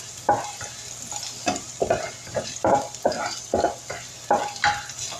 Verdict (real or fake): real